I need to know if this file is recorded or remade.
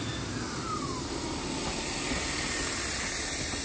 recorded